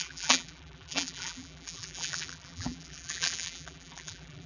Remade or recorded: remade